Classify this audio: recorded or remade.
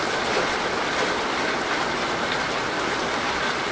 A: recorded